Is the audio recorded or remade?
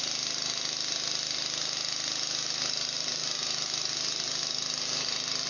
recorded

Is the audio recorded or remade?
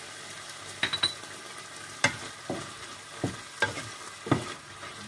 recorded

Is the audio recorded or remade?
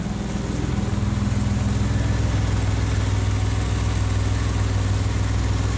recorded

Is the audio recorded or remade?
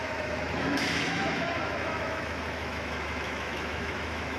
remade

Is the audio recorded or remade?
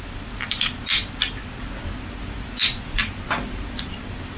recorded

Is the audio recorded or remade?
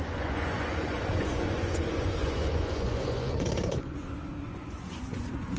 remade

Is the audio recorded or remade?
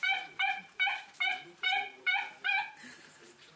remade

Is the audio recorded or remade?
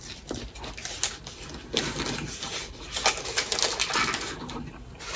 recorded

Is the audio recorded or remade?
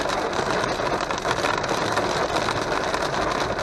recorded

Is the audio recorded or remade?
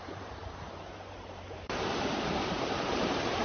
remade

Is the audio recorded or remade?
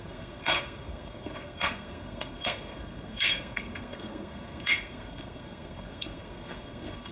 remade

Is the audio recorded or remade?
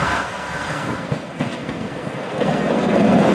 remade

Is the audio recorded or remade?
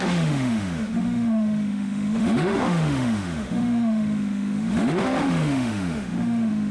remade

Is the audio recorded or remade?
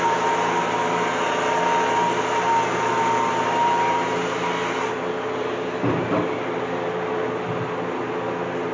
recorded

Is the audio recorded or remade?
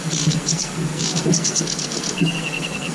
remade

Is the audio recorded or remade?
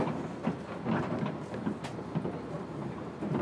recorded